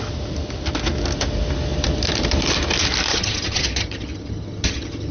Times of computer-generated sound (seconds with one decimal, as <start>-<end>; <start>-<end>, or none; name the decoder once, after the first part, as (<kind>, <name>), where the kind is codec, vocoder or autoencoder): 3.1-5.1 (vocoder, HiFi-GAN)